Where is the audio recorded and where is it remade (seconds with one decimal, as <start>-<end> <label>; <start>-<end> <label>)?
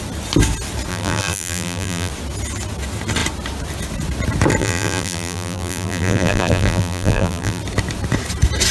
0.0-0.9 recorded; 0.9-2.1 remade; 2.1-4.6 recorded; 4.6-7.6 remade; 7.6-8.7 recorded